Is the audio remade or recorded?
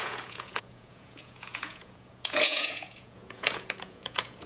remade